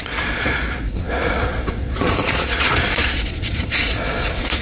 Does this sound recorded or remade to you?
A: remade